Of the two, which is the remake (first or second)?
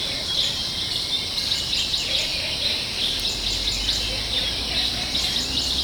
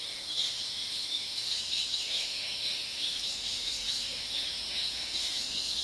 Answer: second